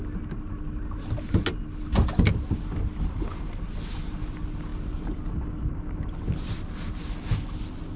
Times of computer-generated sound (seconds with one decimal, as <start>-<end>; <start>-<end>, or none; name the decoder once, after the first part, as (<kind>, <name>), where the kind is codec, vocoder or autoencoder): none